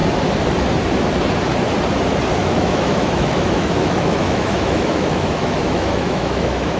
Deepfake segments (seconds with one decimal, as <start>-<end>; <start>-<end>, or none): 2.4-6.8